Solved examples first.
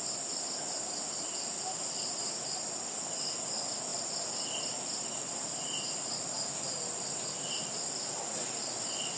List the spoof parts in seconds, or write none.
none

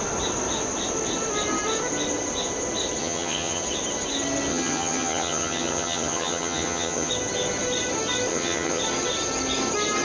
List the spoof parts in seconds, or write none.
3.0-3.6 (vocoder, HiFi-GAN); 4.5-7.1; 8.3-8.8

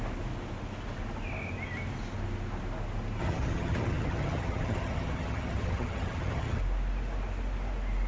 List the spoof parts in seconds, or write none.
3.2-6.6 (vocoder, HiFi-GAN)